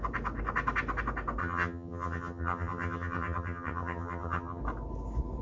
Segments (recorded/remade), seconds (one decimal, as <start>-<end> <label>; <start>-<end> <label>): 0.0-1.4 recorded; 1.4-4.6 remade; 4.6-5.4 recorded